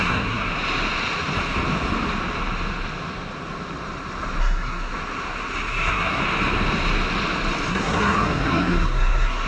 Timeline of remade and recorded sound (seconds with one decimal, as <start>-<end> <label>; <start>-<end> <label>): 0.0-0.5 remade; 0.5-4.4 recorded; 4.4-4.9 remade; 4.9-5.7 recorded; 5.7-6.2 remade; 6.2-7.7 recorded; 7.7-9.5 remade